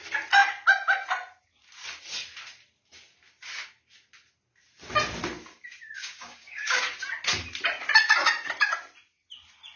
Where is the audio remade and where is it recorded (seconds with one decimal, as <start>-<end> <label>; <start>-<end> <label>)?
0.0-6.0 recorded; 6.0-6.8 remade; 6.8-9.8 recorded